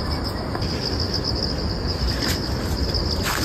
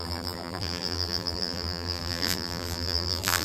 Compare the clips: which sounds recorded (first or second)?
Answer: first